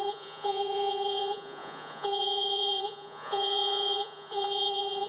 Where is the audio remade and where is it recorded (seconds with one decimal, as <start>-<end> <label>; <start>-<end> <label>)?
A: 0.0-5.1 remade